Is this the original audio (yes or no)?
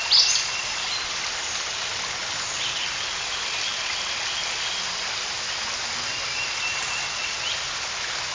yes